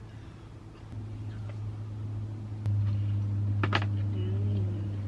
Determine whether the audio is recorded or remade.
recorded